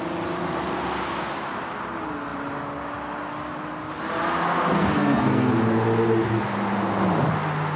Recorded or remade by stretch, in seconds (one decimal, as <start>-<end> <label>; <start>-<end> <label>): 0.0-4.7 recorded; 4.7-5.5 remade; 5.5-7.8 recorded